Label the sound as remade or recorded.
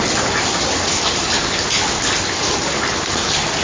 recorded